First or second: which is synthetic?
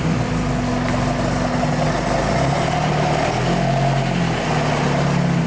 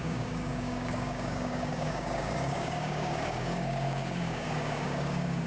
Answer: second